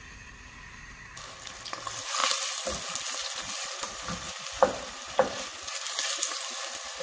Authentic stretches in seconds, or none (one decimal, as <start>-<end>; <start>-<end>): 0.0-7.0